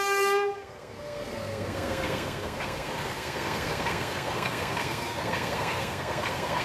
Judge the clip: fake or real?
fake